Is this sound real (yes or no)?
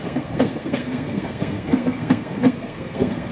no